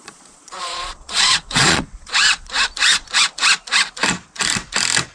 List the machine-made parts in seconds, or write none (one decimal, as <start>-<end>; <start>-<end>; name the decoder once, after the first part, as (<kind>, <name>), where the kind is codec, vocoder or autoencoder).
0.0-2.5 (vocoder, Vocos)